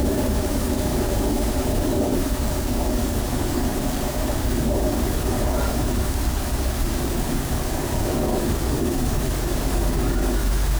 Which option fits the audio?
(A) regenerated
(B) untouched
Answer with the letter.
A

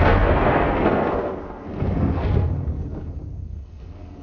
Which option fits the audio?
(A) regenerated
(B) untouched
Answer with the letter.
A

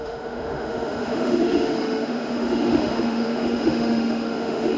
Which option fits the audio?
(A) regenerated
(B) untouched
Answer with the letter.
A